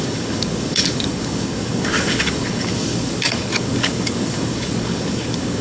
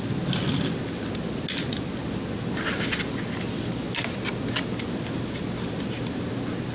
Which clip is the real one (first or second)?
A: second